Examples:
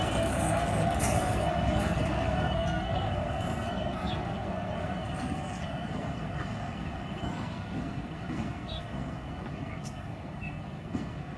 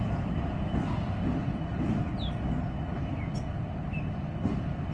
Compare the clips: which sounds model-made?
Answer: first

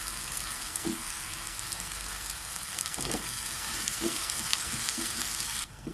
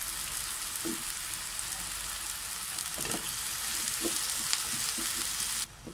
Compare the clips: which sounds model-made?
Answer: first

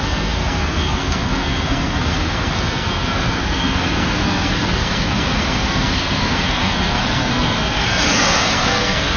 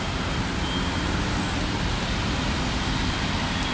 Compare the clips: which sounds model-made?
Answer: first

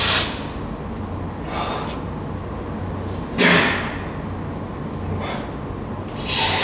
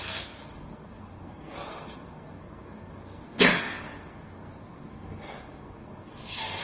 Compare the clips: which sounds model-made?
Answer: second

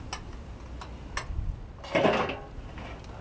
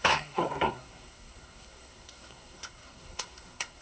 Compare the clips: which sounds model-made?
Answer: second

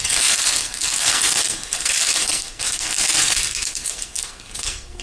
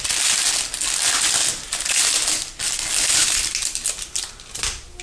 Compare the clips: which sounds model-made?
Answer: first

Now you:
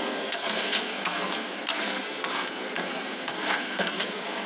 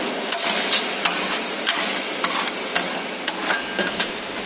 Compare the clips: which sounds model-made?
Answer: first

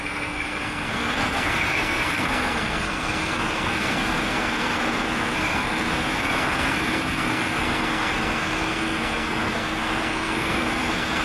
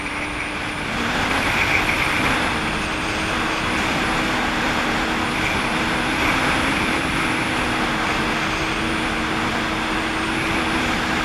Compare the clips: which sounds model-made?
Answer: first